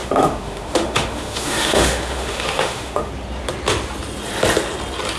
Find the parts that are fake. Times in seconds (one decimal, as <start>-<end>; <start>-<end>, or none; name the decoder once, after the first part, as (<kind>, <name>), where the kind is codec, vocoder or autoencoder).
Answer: 0.0-3.1 (autoencoder, DAC-VAE)